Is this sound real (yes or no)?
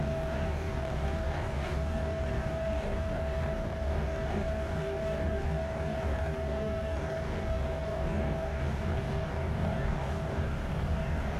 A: no